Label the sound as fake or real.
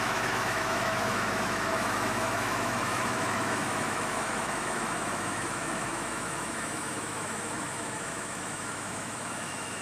fake